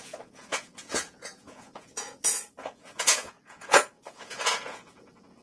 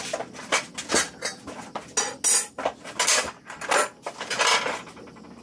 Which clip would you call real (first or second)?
second